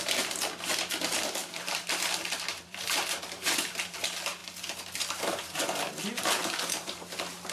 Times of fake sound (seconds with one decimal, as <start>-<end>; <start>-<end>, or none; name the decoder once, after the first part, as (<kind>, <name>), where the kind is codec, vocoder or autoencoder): 0.0-4.4 (vocoder, BigVGAN v2)